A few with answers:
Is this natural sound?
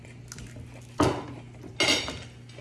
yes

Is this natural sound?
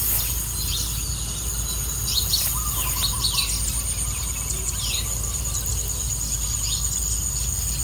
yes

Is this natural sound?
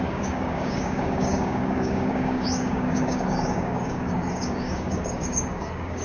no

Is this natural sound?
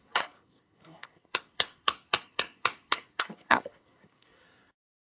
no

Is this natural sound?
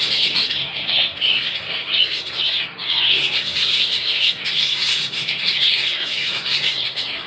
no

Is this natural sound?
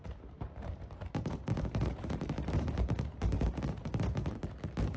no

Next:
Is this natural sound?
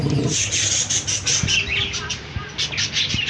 yes